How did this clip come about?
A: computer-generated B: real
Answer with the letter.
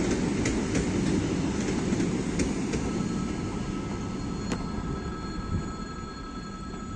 B